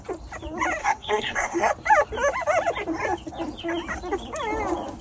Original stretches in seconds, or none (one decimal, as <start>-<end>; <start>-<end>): 0.0-0.8; 1.7-5.0